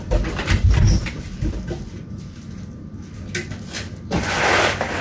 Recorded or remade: recorded